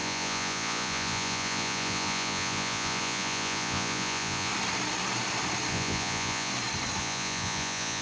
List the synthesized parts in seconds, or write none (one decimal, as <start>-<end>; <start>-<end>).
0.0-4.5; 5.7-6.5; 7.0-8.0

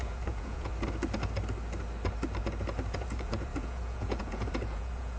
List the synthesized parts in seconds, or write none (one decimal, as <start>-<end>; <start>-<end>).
0.0-0.7; 2.9-5.2

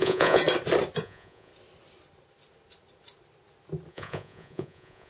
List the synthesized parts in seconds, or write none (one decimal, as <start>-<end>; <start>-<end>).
0.0-0.4; 1.0-1.5; 3.9-5.1

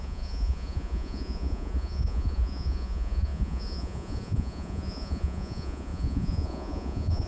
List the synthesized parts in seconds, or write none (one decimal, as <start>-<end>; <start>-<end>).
0.0-7.3